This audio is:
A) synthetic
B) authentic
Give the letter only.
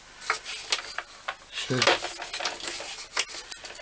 B